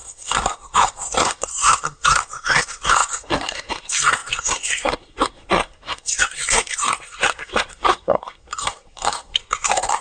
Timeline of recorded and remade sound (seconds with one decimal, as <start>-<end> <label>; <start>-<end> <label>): 0.0-10.0 remade